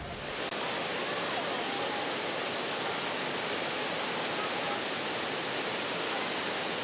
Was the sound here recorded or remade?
recorded